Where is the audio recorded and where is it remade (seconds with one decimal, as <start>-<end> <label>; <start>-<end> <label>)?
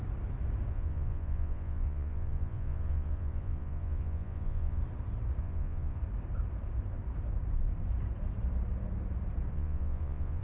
0.0-0.7 recorded; 0.7-4.8 remade; 4.8-5.4 recorded; 5.4-6.0 remade; 6.0-9.5 recorded; 9.5-10.4 remade